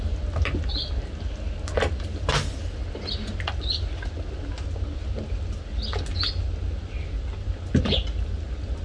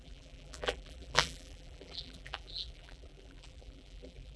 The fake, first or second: second